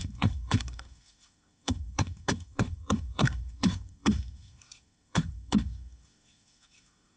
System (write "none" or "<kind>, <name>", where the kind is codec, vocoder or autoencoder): codec, SNAC